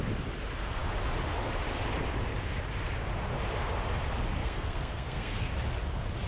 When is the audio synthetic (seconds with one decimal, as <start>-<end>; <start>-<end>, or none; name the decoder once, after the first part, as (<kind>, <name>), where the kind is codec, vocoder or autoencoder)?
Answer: 4.4-5.5 (codec, SNAC)